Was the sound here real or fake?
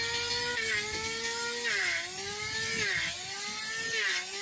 real